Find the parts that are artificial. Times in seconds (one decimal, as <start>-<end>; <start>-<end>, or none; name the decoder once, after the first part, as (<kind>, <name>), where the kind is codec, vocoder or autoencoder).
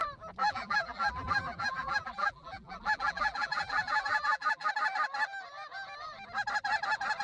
0.4-4.7 (vocoder, BigVGAN v2)